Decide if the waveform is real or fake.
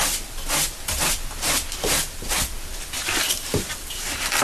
real